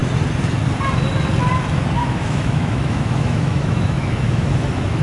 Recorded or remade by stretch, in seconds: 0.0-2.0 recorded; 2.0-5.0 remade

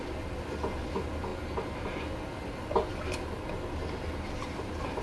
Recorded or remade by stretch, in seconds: 0.0-5.0 recorded

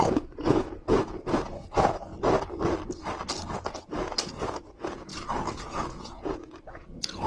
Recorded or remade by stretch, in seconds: 0.0-2.1 remade; 2.1-3.8 recorded; 3.8-5.1 remade; 5.1-5.7 recorded; 5.7-7.3 remade